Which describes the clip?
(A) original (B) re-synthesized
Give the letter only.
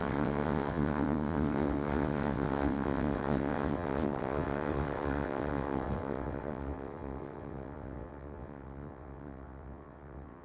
B